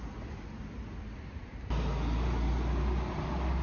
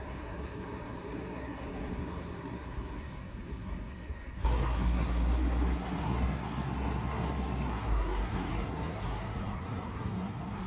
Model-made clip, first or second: second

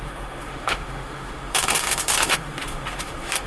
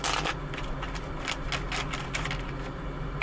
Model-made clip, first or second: first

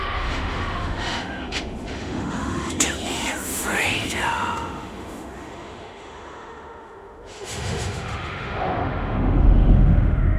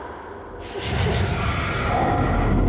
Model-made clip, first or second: first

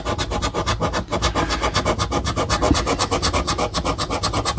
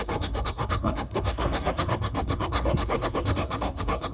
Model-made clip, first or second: second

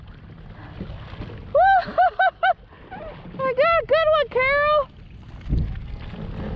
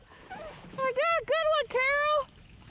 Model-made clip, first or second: second